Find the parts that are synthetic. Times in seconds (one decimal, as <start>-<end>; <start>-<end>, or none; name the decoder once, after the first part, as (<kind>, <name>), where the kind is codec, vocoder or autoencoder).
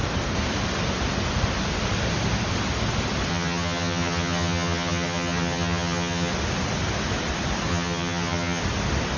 3.3-6.3 (vocoder, HiFi-GAN); 7.7-8.6